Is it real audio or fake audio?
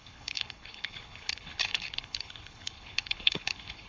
fake